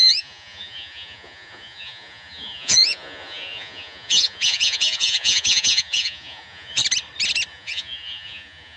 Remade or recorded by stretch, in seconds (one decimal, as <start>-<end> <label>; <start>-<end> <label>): 0.0-6.8 remade; 6.8-7.5 recorded; 7.5-8.8 remade